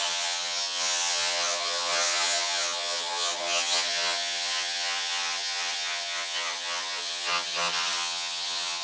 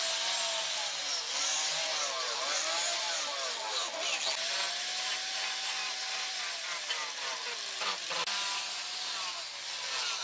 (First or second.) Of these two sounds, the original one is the second